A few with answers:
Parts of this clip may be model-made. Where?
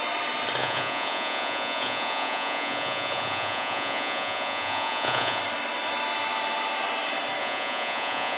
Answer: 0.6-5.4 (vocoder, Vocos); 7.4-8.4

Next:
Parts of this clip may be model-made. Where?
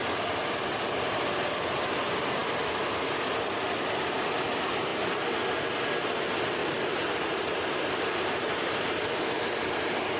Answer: 6.6-8.5 (vocoder, BigVGAN v2)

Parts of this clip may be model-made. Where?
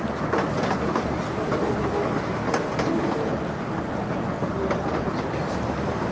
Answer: none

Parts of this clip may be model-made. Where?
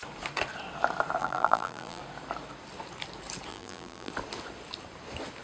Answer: 1.2-2.0 (vocoder, BigVGAN v2); 3.5-4.1